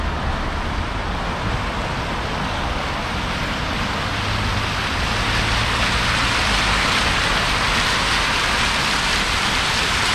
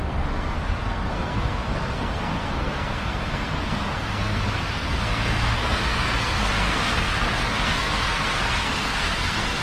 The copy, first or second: second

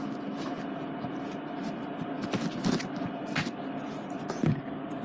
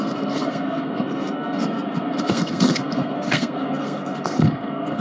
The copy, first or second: second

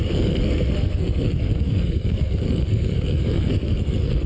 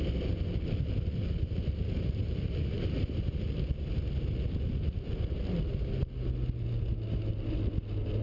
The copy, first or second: first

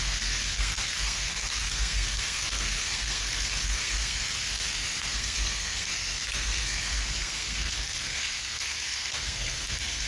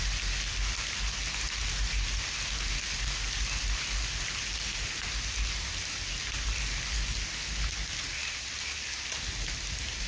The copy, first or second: first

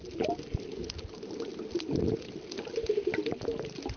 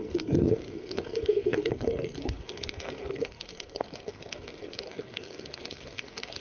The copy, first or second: second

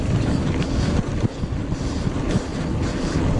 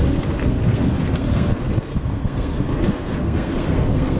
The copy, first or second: second